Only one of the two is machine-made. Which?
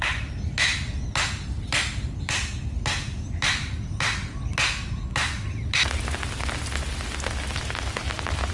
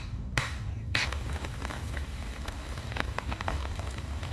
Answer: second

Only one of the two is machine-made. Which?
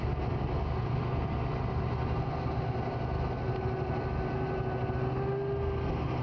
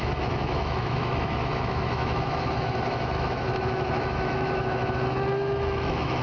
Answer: second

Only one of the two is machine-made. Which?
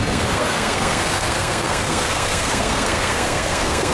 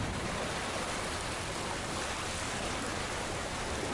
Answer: first